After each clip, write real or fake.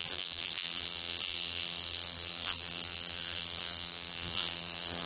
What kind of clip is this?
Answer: fake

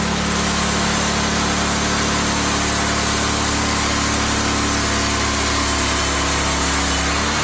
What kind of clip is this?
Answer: real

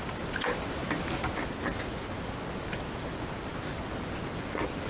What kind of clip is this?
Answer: real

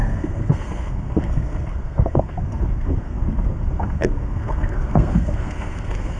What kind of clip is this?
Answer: fake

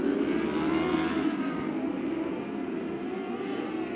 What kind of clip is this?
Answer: real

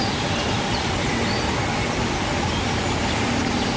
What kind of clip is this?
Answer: real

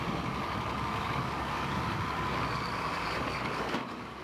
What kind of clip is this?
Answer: fake